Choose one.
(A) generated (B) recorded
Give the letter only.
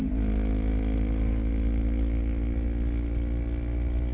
B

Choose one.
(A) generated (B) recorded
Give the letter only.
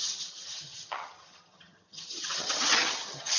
A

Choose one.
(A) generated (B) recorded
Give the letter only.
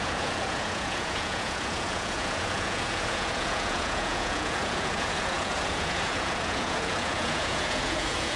A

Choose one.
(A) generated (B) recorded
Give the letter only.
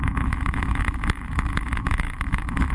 A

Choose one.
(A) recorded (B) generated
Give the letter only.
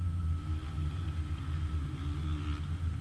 A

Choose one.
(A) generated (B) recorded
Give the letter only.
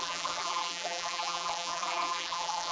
A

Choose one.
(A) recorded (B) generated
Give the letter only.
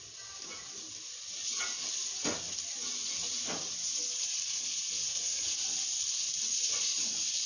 A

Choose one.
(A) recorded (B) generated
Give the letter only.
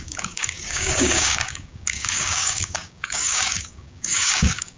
B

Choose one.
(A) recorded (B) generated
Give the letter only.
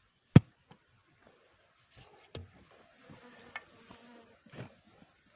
A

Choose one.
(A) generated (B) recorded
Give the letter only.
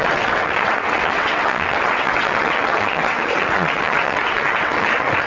A